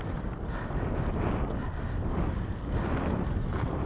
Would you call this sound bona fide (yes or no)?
yes